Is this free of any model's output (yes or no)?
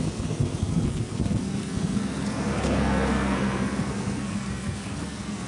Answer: no